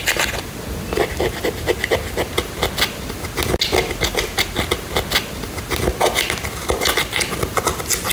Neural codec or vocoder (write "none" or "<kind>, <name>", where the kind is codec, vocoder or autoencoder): none